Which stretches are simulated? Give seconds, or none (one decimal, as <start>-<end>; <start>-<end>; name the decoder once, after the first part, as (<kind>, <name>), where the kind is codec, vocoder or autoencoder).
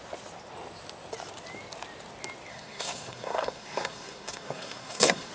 2.5-5.3 (codec, SNAC)